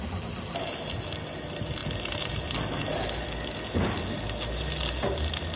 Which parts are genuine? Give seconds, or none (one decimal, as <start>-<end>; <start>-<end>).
0.0-5.5